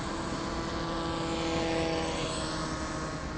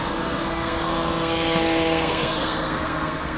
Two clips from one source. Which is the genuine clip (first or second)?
first